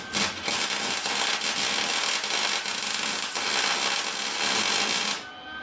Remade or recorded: recorded